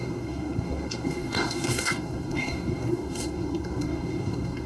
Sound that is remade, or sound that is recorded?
remade